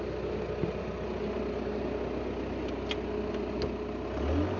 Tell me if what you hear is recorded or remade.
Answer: recorded